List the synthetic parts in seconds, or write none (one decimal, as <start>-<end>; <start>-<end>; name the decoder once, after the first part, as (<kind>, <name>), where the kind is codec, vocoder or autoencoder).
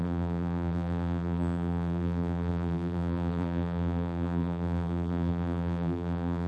0.0-6.5 (vocoder, BigVGAN v2)